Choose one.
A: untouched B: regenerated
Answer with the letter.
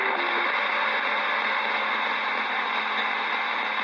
A